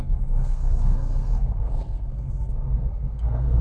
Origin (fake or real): fake